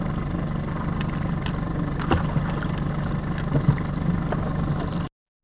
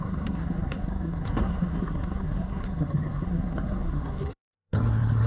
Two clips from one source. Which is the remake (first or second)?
second